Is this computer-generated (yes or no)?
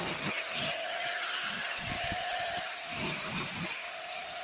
no